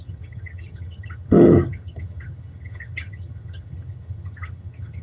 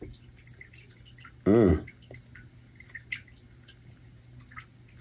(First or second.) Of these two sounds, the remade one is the first